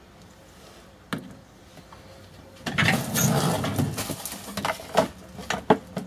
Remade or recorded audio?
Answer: recorded